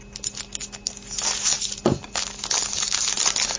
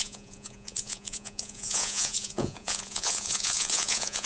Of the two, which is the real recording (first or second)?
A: first